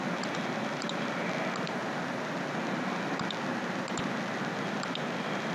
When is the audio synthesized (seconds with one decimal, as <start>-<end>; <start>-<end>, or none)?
none